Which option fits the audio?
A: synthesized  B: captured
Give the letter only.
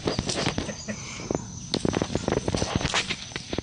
B